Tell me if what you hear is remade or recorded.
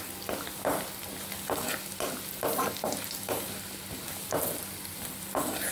recorded